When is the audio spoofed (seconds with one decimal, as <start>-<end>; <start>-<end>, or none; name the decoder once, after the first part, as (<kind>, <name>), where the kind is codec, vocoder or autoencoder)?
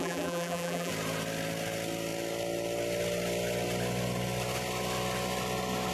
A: 0.0-0.9 (vocoder, BigVGAN v2)